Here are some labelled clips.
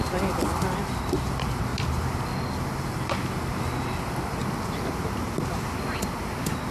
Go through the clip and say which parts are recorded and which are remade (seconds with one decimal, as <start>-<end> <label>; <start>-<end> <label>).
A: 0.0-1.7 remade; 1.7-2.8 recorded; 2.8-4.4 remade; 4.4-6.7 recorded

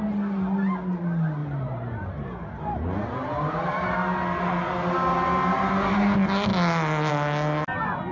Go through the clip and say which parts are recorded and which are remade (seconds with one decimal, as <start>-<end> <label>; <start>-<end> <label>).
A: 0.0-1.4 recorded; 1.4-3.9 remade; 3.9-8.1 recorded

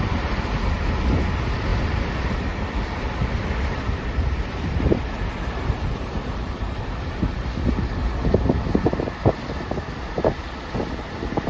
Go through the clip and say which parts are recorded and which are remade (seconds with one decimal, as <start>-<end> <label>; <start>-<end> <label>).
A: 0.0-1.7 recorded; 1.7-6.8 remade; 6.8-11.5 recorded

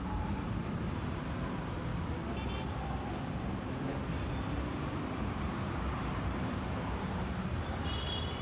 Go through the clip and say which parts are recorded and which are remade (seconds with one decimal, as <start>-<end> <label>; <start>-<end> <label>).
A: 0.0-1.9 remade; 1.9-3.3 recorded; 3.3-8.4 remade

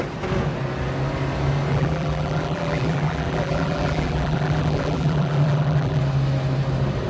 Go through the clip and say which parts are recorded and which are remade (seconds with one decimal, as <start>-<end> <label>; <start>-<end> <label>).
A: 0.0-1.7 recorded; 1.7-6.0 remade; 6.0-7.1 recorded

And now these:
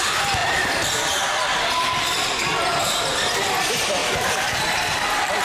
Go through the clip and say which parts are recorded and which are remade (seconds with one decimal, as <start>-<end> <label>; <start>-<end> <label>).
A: 0.0-0.4 remade; 0.4-3.6 recorded; 3.6-5.4 remade

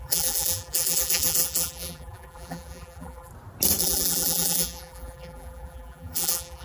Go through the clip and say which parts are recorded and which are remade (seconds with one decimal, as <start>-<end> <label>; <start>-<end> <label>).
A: 0.0-3.3 remade; 3.3-3.8 recorded; 3.8-6.6 remade

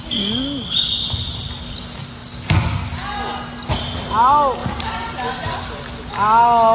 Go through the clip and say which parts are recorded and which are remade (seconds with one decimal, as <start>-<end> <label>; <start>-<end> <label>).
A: 0.0-4.6 recorded; 4.6-6.1 remade; 6.1-6.7 recorded